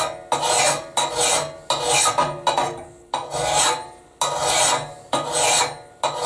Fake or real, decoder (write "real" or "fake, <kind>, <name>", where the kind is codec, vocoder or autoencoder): real